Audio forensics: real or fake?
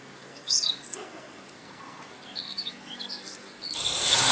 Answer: fake